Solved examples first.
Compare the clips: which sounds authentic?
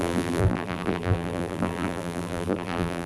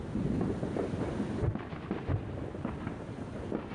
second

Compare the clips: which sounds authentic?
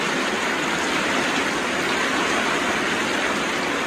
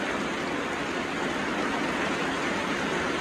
second